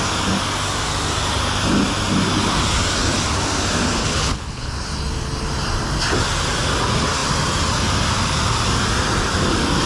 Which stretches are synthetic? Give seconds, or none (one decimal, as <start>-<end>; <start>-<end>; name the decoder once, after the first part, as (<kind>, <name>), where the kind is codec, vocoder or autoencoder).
4.0-4.7 (codec, HILCodec)